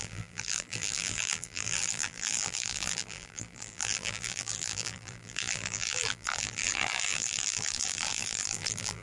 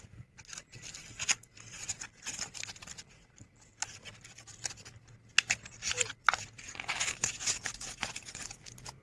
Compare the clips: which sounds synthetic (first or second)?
first